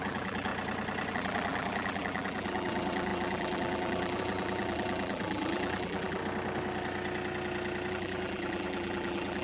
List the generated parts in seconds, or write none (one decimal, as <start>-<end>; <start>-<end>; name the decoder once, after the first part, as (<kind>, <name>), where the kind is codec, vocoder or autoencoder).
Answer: 0.0-0.5 (vocoder, BigVGAN v2); 1.1-6.2; 7.9-9.4